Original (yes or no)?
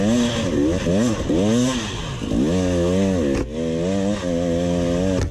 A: yes